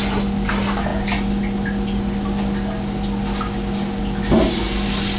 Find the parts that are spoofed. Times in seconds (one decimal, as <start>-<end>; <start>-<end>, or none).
none